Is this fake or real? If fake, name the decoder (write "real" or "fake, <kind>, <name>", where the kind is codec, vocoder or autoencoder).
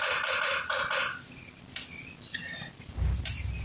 fake, vocoder, BigVGAN v2